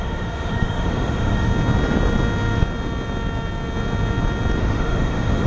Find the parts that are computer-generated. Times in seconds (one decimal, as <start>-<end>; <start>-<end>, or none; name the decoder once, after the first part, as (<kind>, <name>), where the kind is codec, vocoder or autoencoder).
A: 0.0-1.5 (autoencoder, DAC-VAE); 4.6-5.5